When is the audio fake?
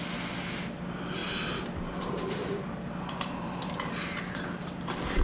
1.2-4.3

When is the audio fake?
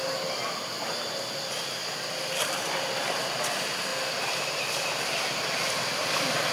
none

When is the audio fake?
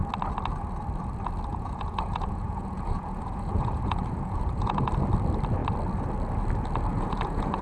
1.5-4.9; 6.9-7.6